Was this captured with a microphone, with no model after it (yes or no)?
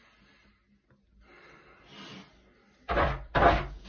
yes